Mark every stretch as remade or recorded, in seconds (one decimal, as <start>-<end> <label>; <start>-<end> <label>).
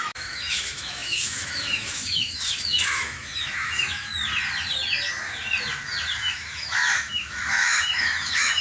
0.0-4.1 remade; 4.1-6.2 recorded; 6.2-8.6 remade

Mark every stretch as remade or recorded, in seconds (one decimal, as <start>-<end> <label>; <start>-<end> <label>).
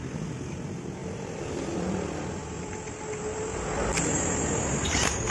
0.0-1.0 recorded; 1.0-4.2 remade; 4.2-5.3 recorded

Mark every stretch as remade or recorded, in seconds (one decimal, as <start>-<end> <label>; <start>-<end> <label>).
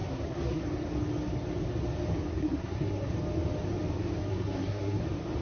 0.0-0.6 remade; 0.6-2.3 recorded; 2.3-3.1 remade; 3.1-4.3 recorded; 4.3-5.0 remade; 5.0-5.4 recorded